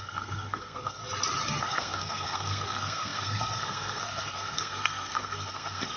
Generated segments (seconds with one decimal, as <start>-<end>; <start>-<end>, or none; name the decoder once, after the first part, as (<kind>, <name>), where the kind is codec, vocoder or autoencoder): 0.0-1.0 (codec, SNAC); 1.6-6.0